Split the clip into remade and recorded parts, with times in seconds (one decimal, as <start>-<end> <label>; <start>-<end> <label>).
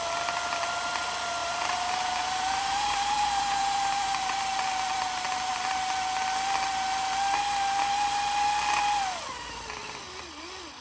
0.0-1.4 recorded; 1.4-4.6 remade; 4.6-10.8 recorded